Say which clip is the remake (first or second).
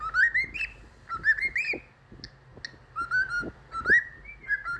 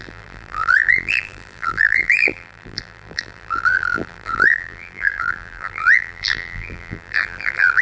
second